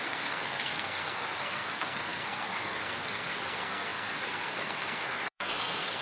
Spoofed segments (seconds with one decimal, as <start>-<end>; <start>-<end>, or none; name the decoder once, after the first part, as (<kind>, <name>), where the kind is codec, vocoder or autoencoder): 0.0-6.0 (codec, SNAC)